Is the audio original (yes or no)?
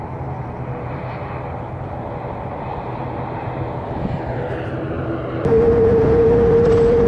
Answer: no